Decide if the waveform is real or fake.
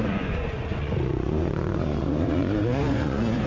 fake